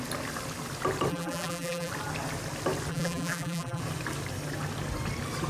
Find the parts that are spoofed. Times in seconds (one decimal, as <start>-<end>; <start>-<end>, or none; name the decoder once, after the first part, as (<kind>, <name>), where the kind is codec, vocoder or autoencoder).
1.1-1.9 (vocoder, BigVGAN v2); 2.9-3.8